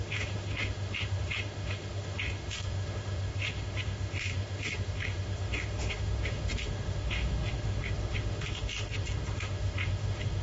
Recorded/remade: remade